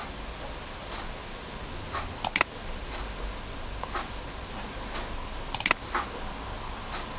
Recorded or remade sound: recorded